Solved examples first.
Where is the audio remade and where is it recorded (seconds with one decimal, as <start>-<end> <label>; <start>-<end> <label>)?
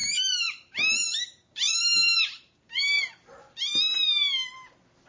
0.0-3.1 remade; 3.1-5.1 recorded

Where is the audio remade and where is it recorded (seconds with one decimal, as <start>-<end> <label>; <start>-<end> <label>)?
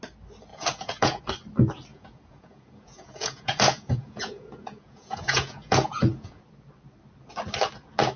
0.0-0.5 recorded; 0.5-1.2 remade; 1.2-1.9 recorded; 1.9-6.4 remade; 6.4-8.2 recorded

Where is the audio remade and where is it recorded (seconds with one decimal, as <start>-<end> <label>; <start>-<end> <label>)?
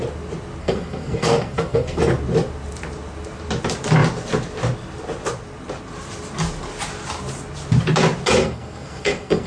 0.0-0.6 recorded; 0.6-2.0 remade; 2.0-8.4 recorded; 8.4-9.5 remade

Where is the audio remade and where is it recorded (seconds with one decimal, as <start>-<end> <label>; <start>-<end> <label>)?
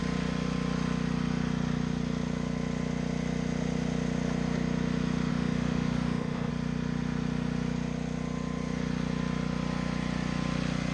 0.0-5.3 recorded; 5.3-6.5 remade; 6.5-10.9 recorded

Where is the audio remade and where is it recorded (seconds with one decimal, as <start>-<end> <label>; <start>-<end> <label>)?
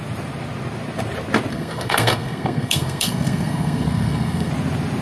0.0-1.5 recorded; 1.5-4.5 remade; 4.5-5.0 recorded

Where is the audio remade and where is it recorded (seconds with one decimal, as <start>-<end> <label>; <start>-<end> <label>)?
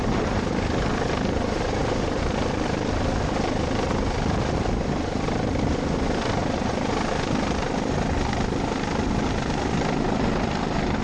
0.0-2.2 remade; 2.2-6.4 recorded; 6.4-7.1 remade; 7.1-11.0 recorded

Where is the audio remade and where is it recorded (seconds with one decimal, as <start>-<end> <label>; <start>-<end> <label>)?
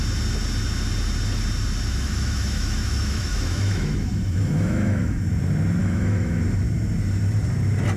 0.0-1.9 recorded; 1.9-5.2 remade; 5.2-5.8 recorded; 5.8-6.4 remade; 6.4-8.0 recorded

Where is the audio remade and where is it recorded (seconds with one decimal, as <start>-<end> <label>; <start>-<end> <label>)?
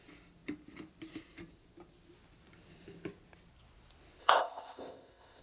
0.0-4.2 recorded; 4.2-5.4 remade